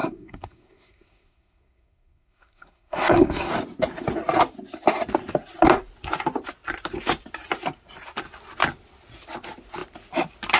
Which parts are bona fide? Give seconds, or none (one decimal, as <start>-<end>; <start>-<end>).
3.5-10.6